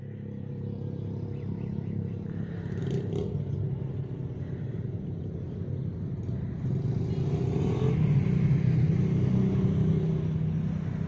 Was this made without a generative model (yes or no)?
yes